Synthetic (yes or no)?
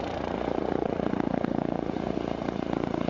yes